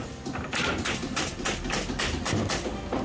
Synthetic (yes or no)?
no